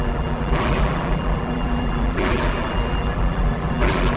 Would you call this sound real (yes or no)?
no